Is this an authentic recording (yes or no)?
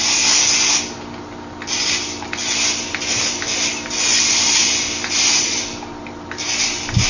yes